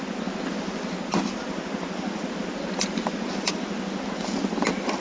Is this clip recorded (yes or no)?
yes